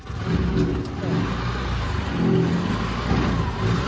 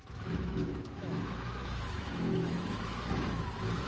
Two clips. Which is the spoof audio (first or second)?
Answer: second